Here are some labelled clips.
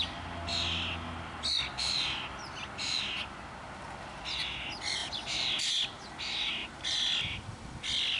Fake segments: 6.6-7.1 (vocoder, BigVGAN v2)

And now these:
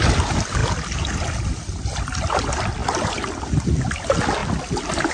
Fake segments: none

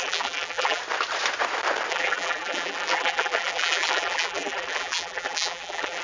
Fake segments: 0.0-0.8 (vocoder, BigVGAN v2); 1.9-6.0

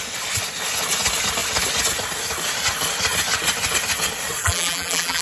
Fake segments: 4.4-5.2 (vocoder, BigVGAN v2)

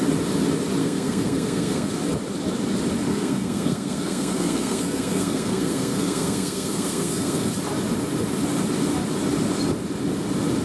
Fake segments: 0.8-1.9 (codec, SNAC); 3.1-7.5

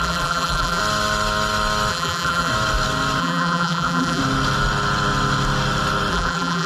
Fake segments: 0.0-0.8 (vocoder, BigVGAN v2); 1.9-2.5; 3.2-4.2; 6.1-6.7